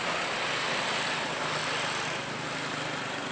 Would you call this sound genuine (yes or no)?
yes